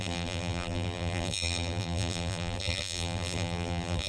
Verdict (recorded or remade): remade